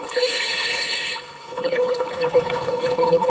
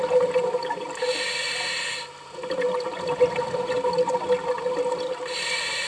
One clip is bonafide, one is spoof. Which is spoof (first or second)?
first